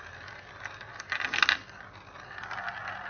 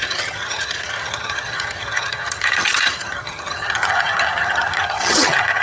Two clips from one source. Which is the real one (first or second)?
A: first